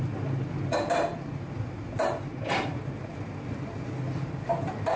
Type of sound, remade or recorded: recorded